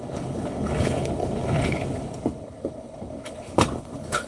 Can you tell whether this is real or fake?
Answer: fake